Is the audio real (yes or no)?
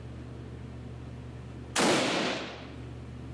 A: yes